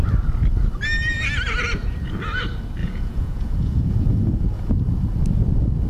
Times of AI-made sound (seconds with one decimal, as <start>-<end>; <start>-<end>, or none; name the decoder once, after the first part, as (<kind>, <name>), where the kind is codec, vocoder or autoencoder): 2.8-4.7 (vocoder, Vocos)